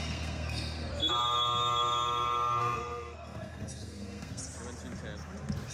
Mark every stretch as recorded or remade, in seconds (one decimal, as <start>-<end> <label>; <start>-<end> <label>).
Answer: 0.0-0.9 remade; 0.9-2.6 recorded; 2.6-4.4 remade; 4.4-5.7 recorded